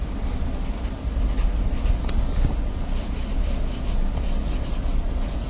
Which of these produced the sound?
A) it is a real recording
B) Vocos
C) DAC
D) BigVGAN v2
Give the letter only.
D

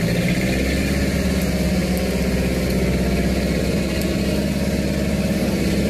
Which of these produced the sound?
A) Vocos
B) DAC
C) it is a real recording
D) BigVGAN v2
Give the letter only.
C